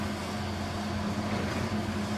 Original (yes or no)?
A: yes